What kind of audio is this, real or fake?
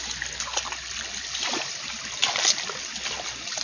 real